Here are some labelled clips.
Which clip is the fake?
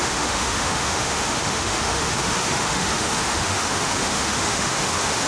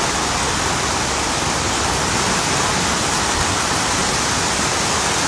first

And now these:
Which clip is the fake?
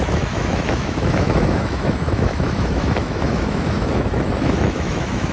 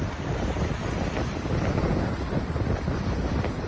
first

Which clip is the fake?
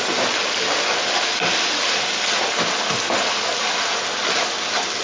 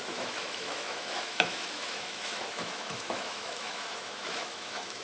second